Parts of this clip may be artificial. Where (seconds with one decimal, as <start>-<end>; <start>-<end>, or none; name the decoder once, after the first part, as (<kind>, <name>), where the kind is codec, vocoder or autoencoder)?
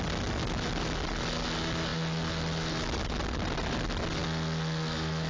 none